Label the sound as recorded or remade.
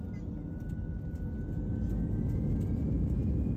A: recorded